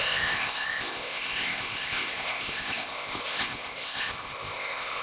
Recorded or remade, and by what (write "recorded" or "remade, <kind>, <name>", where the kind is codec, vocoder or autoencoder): remade, codec, ZipCodec